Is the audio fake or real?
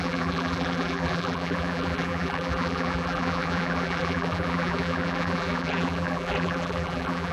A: fake